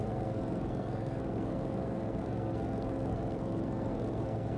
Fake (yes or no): yes